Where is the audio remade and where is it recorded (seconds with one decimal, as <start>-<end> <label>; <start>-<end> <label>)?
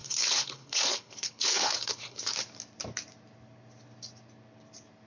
0.0-2.3 remade; 2.3-5.1 recorded